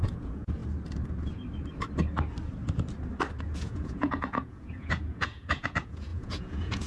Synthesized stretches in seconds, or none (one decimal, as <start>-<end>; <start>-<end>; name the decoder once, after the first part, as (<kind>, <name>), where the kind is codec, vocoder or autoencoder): 0.0-0.6 (vocoder, Vocos); 3.4-6.9